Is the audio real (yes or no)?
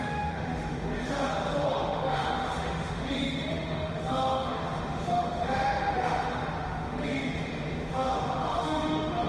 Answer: no